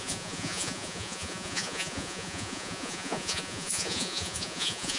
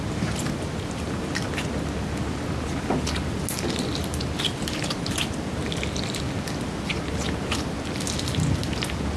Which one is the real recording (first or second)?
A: second